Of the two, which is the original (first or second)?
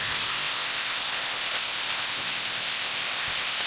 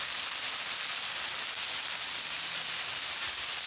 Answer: second